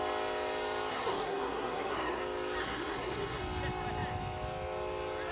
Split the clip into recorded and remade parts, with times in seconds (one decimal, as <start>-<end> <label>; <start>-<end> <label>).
0.0-0.9 recorded; 0.9-2.2 remade; 2.2-2.6 recorded; 2.6-3.4 remade; 3.4-5.3 recorded